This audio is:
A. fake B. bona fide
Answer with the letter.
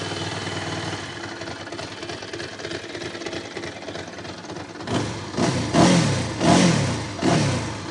B